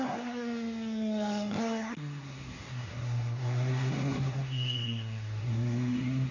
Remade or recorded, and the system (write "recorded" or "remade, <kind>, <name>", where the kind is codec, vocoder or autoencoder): remade, codec, SNAC